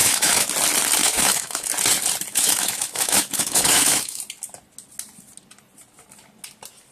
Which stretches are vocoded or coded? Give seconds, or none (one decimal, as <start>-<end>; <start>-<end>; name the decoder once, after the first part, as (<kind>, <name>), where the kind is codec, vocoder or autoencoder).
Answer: 0.0-0.5 (autoencoder, DAC-VAE); 1.0-1.7; 2.3-4.2